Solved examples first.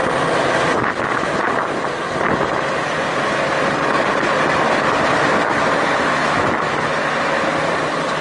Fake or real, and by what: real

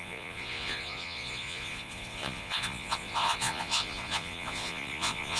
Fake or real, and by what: fake, vocoder, Vocos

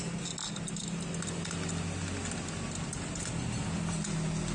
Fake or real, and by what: real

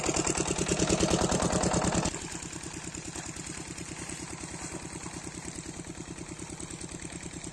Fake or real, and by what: real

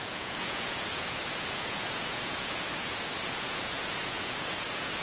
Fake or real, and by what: fake, vocoder, Vocos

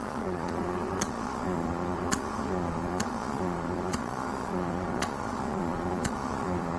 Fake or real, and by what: fake, vocoder, Vocos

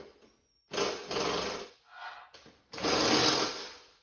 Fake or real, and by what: real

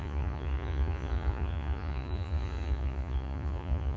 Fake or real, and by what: fake, vocoder, Vocos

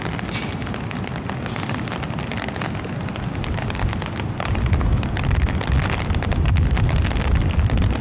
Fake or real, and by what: real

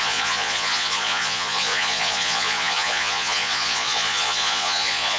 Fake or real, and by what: fake, vocoder, Vocos